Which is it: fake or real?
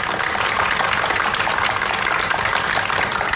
real